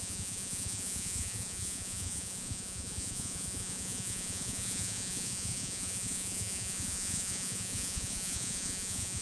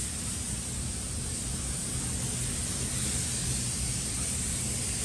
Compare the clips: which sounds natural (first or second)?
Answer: second